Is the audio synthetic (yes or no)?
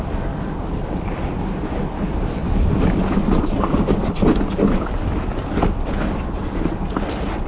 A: no